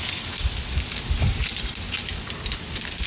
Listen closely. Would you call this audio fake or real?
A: real